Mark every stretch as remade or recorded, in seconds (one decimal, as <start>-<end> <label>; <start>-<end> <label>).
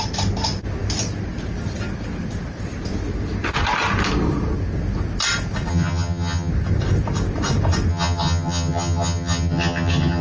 0.0-5.7 recorded; 5.7-6.5 remade; 6.5-7.9 recorded; 7.9-10.2 remade